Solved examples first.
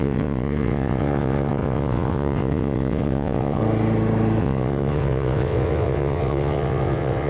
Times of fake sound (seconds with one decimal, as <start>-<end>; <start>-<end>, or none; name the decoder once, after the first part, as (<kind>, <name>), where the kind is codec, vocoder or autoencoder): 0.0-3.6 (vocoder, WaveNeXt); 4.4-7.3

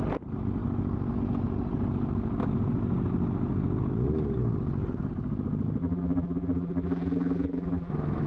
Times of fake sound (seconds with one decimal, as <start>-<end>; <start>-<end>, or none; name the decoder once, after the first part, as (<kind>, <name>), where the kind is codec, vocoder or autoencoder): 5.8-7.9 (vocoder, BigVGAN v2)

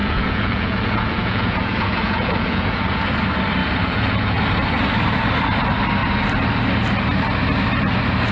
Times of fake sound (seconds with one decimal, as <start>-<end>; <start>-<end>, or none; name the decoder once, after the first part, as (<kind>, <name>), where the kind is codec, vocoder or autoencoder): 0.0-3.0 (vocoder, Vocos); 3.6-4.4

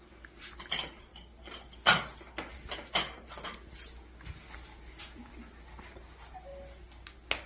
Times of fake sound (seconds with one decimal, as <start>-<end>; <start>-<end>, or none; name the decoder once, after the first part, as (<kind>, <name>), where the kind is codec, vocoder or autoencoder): none